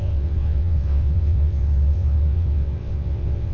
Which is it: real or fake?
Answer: fake